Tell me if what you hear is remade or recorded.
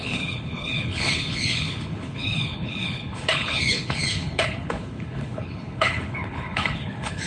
remade